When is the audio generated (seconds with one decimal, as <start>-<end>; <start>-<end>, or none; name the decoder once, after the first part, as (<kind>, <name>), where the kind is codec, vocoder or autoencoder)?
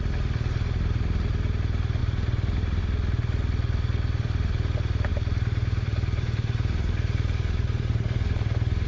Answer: 2.0-2.8 (vocoder, BigVGAN v2); 5.1-8.9